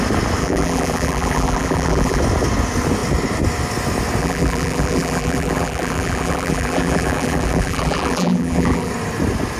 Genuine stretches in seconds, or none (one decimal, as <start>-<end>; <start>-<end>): 0.0-0.4; 2.2-4.2; 8.9-9.6